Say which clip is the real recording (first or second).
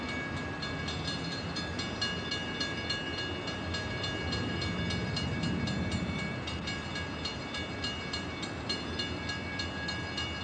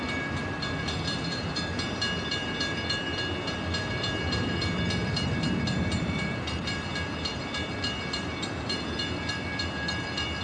first